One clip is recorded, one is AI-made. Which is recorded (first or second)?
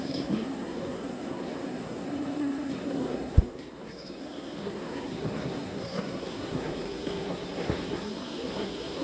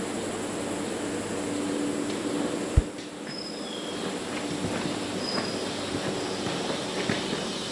second